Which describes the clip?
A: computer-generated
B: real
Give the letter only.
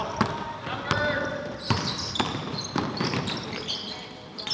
A